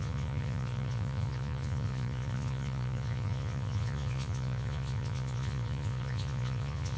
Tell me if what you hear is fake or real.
fake